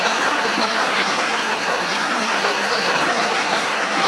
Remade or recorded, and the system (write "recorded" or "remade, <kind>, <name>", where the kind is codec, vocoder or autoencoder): remade, codec, SNAC